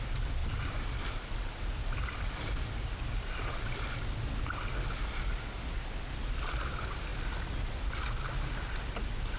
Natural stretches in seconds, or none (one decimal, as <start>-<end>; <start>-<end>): 0.0-9.4